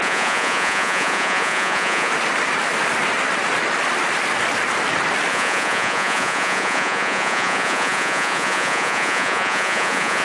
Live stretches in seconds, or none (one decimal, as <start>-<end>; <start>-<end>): 2.1-5.3